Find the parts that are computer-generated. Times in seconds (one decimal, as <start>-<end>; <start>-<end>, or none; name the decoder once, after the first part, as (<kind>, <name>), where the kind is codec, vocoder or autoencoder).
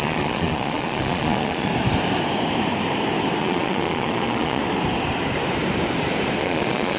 0.0-1.7 (vocoder, Vocos); 3.4-4.6; 6.4-7.0